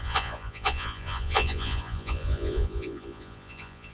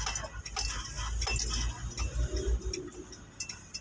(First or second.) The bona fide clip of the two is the second